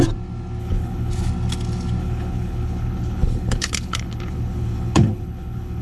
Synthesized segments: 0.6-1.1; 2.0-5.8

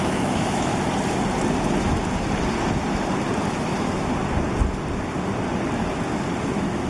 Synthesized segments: 0.0-0.7; 3.5-4.1; 6.4-6.9